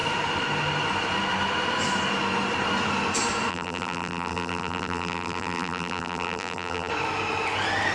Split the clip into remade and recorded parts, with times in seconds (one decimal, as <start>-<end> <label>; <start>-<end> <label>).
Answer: 0.0-3.5 recorded; 3.5-6.9 remade; 6.9-7.9 recorded